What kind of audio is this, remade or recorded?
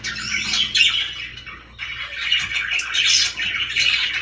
recorded